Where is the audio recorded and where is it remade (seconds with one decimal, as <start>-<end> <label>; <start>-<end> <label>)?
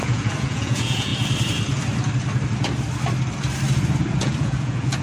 0.0-1.1 remade; 1.1-4.1 recorded; 4.1-5.0 remade